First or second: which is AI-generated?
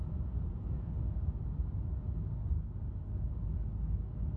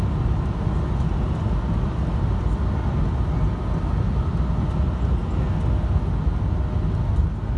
first